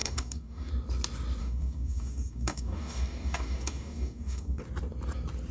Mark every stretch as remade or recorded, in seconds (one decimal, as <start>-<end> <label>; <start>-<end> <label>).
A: 0.0-0.7 remade; 0.7-1.4 recorded; 1.4-4.6 remade; 4.6-5.5 recorded